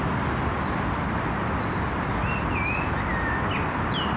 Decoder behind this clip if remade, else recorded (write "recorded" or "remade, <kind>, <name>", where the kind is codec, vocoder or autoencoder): recorded